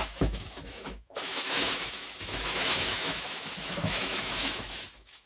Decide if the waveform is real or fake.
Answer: fake